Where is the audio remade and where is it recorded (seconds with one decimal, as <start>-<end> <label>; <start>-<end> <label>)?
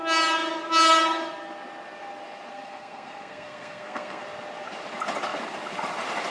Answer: 0.0-2.5 recorded; 2.5-4.2 remade; 4.2-6.3 recorded